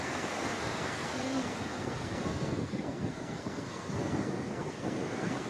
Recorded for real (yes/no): no